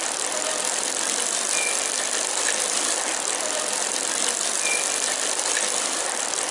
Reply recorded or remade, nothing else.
remade